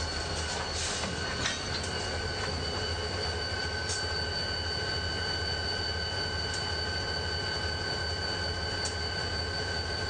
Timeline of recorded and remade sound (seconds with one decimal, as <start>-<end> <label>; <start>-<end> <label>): 0.0-10.1 recorded

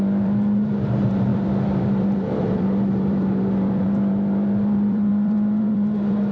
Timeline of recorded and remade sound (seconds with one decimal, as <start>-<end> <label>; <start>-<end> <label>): 0.0-6.3 remade

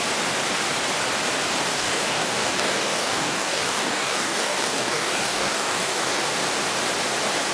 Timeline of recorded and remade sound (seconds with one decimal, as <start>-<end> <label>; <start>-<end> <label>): 0.0-1.7 recorded; 1.7-6.2 remade; 6.2-7.5 recorded

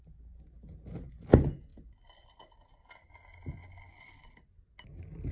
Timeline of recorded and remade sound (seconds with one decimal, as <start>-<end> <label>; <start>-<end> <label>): 0.0-5.3 recorded

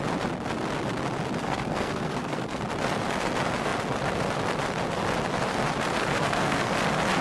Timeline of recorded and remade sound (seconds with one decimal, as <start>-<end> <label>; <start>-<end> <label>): 0.0-1.4 recorded; 1.4-2.6 remade; 2.6-6.1 recorded; 6.1-6.7 remade; 6.7-7.2 recorded

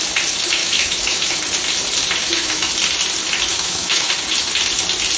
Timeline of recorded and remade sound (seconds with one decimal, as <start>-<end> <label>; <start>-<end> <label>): 0.0-0.6 recorded; 0.6-1.4 remade; 1.4-2.2 recorded; 2.2-2.7 remade; 2.7-3.5 recorded; 3.5-4.1 remade; 4.1-5.2 recorded